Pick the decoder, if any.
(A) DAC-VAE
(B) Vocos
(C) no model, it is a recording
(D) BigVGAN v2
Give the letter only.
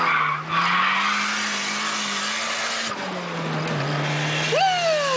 C